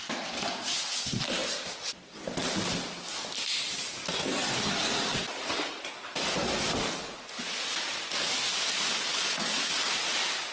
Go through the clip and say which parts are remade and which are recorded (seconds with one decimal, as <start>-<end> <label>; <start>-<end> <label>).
0.0-9.1 recorded; 9.1-9.7 remade; 9.7-10.5 recorded